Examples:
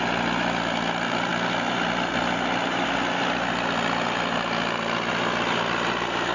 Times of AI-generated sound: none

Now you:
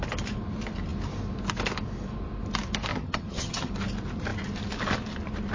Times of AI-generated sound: 2.9-3.7 (vocoder, HiFi-GAN)

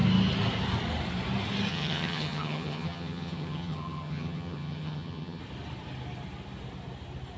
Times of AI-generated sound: 1.7-5.4 (vocoder, HiFi-GAN)

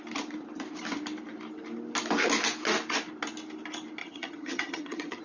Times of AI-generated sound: 4.0-5.2 (vocoder, HiFi-GAN)

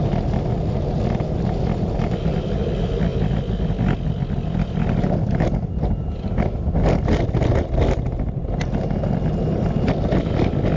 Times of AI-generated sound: none

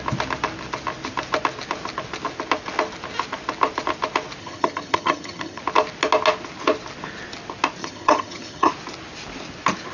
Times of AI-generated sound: 4.4-5.6 (vocoder, HiFi-GAN); 7.8-8.7

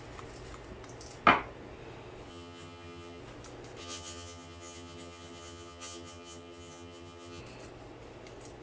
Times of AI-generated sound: 2.3-3.2 (vocoder, HiFi-GAN); 3.8-7.4